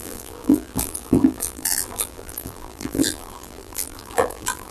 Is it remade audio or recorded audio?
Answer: remade